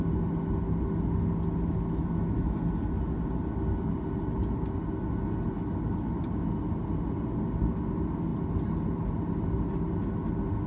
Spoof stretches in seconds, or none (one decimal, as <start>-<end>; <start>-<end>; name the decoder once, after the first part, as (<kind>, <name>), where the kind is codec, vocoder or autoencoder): none